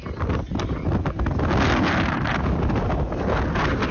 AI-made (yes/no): no